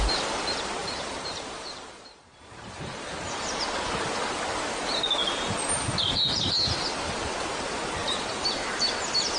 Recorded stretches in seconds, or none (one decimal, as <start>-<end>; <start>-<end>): 0.0-0.8; 3.9-8.0; 8.9-9.4